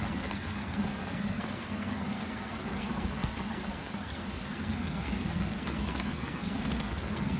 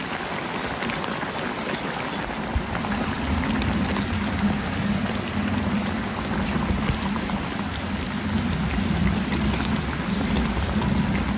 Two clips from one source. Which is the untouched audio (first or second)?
second